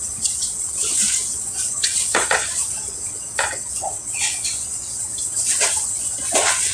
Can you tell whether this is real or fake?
fake